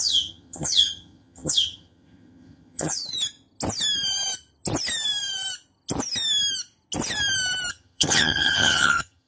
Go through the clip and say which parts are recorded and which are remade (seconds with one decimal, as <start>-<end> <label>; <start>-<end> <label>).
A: 0.0-3.0 remade; 3.0-7.7 recorded; 7.7-9.3 remade